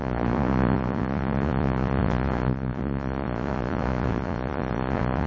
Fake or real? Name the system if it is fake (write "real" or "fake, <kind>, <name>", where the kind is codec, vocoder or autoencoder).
fake, vocoder, Vocos